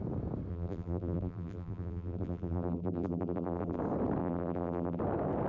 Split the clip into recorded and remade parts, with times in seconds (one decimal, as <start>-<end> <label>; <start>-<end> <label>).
0.0-0.5 recorded; 0.5-3.8 remade; 3.8-4.2 recorded; 4.2-5.0 remade; 5.0-5.5 recorded